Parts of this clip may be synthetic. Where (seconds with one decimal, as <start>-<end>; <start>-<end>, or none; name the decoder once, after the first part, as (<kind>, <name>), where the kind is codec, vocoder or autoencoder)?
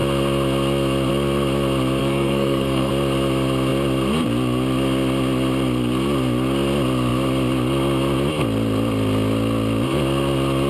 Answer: 2.0-2.9 (codec, SNAC)